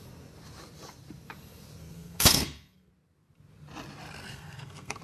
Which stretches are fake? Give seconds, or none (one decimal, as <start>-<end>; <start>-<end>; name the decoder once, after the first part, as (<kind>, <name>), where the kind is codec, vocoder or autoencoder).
1.8-2.9 (codec, SNAC); 4.2-5.0